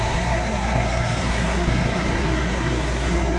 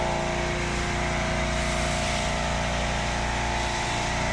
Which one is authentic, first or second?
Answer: second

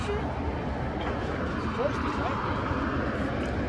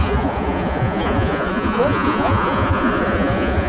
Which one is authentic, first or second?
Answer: first